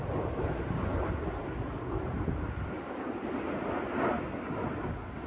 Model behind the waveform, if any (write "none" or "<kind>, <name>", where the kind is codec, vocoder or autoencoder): none